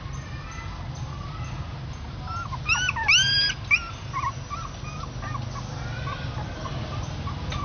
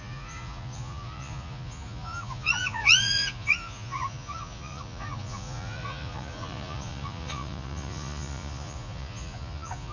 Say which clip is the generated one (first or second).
second